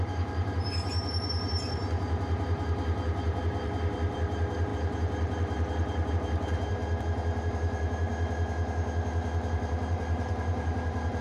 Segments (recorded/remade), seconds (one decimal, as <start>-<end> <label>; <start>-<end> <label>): 0.0-6.8 remade; 6.8-7.5 recorded; 7.5-8.1 remade; 8.1-9.5 recorded; 9.5-11.2 remade